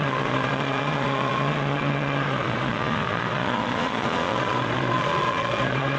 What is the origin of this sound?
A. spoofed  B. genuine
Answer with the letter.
A